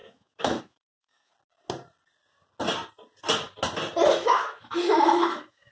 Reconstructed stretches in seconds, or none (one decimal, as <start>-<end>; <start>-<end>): 0.0-1.3; 4.1-5.7